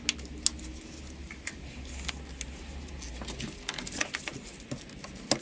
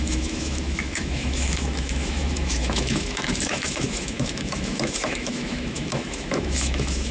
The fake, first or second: second